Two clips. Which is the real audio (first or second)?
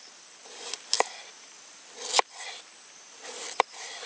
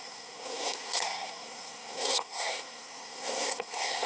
first